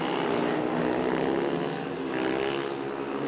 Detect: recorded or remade recorded